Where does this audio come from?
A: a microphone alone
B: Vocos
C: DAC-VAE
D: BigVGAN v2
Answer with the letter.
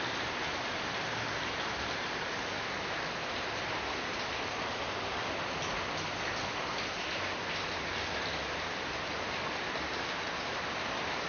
A